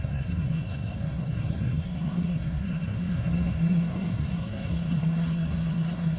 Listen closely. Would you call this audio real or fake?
fake